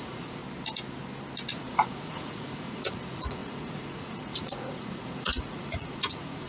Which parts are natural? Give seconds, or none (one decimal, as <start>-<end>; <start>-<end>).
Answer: 0.4-1.5